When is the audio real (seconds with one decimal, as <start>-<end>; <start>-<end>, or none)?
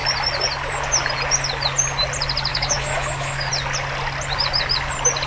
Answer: 0.0-2.5; 3.5-5.3